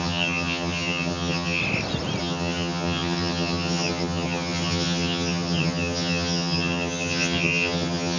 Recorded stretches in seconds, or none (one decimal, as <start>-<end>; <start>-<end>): 1.6-2.2